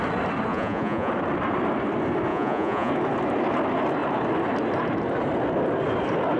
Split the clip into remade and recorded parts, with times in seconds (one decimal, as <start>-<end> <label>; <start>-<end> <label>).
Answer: 0.0-0.5 recorded; 0.5-1.1 remade; 1.1-2.3 recorded; 2.3-2.9 remade; 2.9-6.4 recorded